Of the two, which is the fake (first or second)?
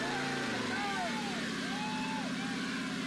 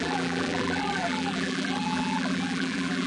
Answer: second